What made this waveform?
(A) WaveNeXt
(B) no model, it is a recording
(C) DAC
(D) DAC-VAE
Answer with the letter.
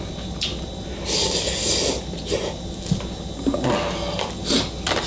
B